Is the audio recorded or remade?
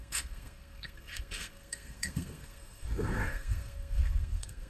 remade